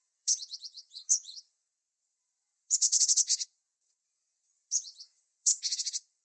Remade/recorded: remade